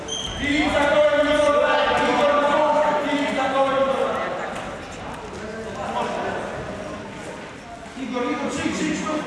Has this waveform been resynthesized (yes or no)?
no